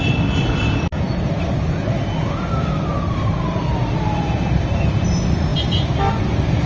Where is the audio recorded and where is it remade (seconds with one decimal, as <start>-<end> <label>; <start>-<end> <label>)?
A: 0.0-6.7 recorded